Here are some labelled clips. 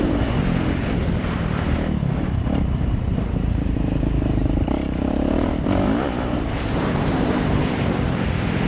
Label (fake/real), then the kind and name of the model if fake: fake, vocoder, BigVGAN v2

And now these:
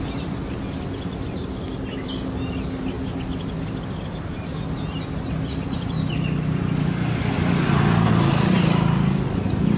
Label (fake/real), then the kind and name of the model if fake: real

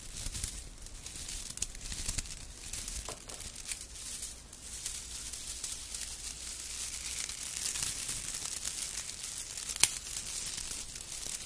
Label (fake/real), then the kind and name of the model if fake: real